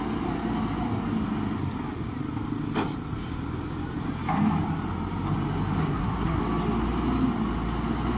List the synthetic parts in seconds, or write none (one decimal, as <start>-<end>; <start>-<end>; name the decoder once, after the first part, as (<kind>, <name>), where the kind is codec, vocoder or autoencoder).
5.8-6.4 (codec, SNAC)